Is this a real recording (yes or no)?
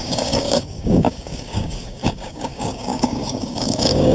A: no